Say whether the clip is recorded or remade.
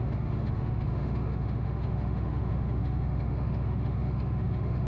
remade